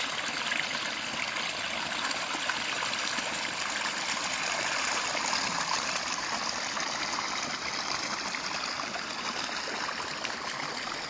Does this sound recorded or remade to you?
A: recorded